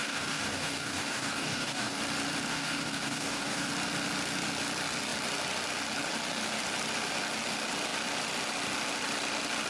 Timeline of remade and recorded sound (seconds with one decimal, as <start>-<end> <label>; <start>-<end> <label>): 0.0-2.0 remade; 2.0-2.5 recorded; 2.5-3.7 remade; 3.7-9.7 recorded